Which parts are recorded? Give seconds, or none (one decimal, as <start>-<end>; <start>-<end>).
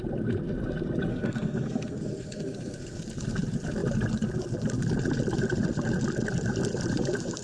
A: 0.0-1.1; 3.0-7.4